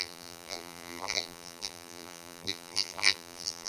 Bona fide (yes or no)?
no